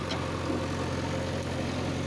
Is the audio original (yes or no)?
yes